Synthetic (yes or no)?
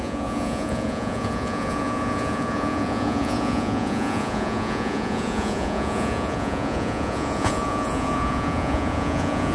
yes